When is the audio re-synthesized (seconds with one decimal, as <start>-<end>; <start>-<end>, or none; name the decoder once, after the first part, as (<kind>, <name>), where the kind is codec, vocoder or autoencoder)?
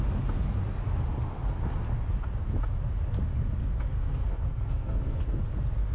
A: 3.6-5.2 (codec, SNAC)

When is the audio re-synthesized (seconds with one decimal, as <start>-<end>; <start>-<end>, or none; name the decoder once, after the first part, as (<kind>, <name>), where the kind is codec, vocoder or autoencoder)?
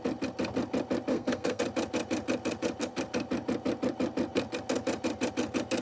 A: 1.1-1.6 (codec, SNAC)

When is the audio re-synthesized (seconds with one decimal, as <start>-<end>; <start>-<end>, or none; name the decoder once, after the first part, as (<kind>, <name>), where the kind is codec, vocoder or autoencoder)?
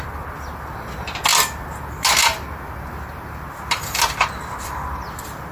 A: none